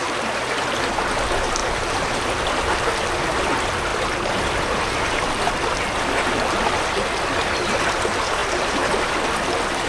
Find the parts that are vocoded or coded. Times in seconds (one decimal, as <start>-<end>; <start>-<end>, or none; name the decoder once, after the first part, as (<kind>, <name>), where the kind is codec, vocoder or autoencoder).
1.6-2.7 (vocoder, BigVGAN v2); 3.9-5.5; 8.4-9.0